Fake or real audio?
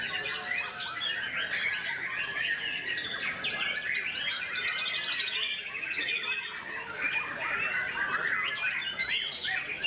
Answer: real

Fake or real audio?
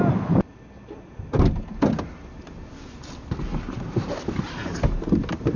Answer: real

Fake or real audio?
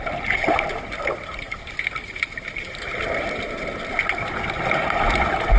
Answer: real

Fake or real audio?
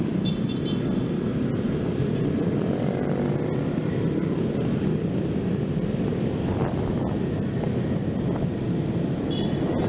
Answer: real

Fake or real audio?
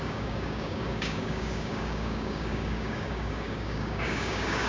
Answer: fake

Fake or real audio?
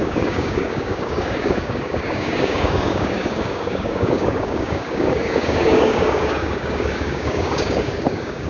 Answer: fake